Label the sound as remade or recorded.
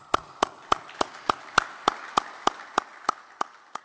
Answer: recorded